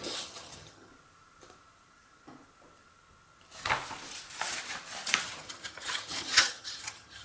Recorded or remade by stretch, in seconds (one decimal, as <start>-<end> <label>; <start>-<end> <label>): 0.0-0.9 remade; 0.9-5.2 recorded; 5.2-7.2 remade